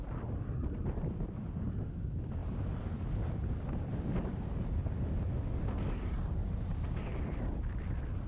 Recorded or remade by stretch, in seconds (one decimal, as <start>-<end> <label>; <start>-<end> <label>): 0.0-8.3 recorded